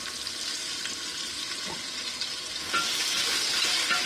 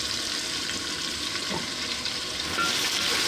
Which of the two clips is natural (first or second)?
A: first